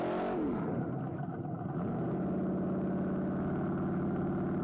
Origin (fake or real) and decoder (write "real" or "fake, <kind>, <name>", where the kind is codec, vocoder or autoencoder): real